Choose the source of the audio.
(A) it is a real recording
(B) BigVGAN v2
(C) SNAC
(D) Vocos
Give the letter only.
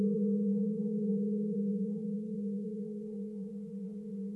D